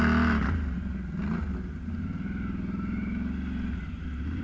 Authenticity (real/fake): real